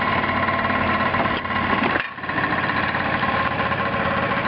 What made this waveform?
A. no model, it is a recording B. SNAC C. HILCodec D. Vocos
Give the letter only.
A